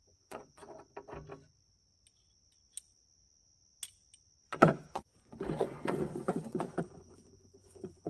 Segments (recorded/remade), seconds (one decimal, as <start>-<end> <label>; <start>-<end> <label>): 0.0-0.6 remade; 0.6-4.5 recorded; 4.5-8.1 remade